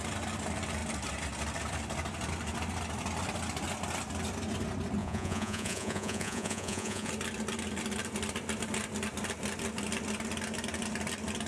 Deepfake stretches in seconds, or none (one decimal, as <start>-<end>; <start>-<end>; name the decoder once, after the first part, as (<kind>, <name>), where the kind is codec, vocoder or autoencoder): 5.0-7.1 (vocoder, Vocos)

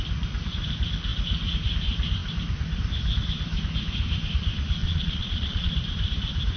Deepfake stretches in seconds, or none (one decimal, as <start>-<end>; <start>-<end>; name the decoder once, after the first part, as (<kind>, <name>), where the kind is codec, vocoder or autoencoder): 4.8-5.7 (vocoder, Vocos)

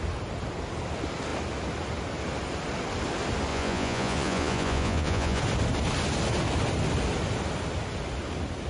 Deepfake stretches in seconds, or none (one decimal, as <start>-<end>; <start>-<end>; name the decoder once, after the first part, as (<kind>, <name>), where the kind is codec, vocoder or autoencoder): 3.5-5.4 (vocoder, Vocos)

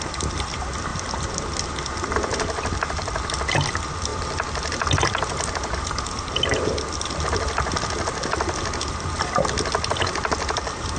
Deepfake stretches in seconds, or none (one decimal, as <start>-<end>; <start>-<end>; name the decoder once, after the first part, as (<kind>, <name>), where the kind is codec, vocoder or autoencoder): none

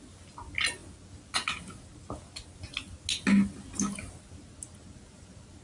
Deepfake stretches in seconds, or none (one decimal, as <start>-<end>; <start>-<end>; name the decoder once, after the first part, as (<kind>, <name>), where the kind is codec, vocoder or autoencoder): none

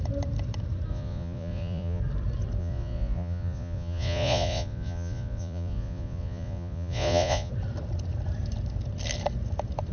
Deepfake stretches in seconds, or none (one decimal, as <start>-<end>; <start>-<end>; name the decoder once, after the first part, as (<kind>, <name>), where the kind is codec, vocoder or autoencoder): 0.9-2.0 (vocoder, Vocos); 2.6-7.5

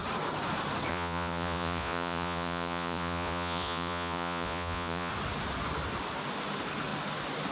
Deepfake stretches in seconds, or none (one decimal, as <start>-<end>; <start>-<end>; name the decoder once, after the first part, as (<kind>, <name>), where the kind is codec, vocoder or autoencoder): 0.9-5.1 (vocoder, Vocos)